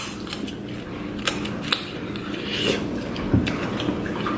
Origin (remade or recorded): recorded